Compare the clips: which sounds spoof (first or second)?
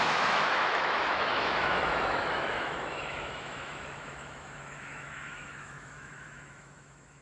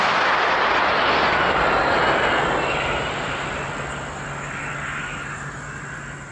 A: first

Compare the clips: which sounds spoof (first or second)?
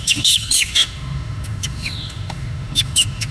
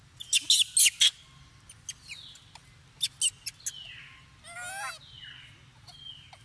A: first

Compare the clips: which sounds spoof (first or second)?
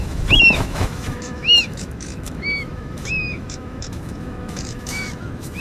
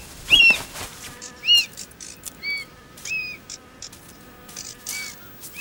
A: first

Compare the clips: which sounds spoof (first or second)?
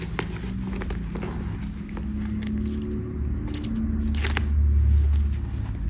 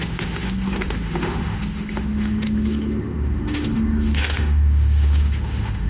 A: second